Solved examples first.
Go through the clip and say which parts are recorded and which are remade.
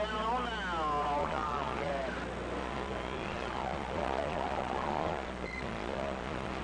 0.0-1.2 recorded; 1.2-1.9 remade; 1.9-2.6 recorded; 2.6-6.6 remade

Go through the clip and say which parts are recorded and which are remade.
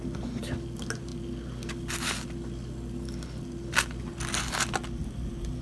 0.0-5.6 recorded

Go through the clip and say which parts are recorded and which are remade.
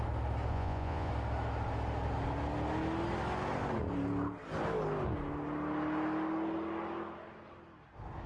0.0-0.5 recorded; 0.5-1.1 remade; 1.1-8.3 recorded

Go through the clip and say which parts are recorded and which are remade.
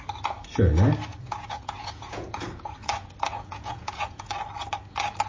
0.0-1.1 recorded; 1.1-4.3 remade; 4.3-5.3 recorded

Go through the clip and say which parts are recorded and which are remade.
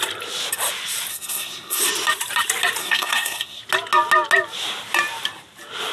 0.0-1.1 recorded; 1.1-1.8 remade; 1.8-2.8 recorded; 2.8-3.6 remade; 3.6-5.9 recorded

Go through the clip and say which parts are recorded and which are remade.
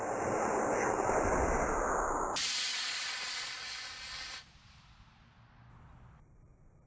0.0-2.7 recorded; 2.7-3.5 remade; 3.5-6.9 recorded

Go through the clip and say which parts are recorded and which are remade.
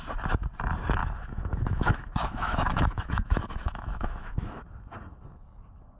0.0-1.0 recorded; 1.0-4.6 remade; 4.6-6.0 recorded